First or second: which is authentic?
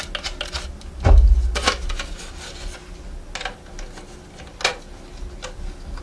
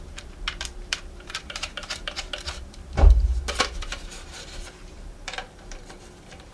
first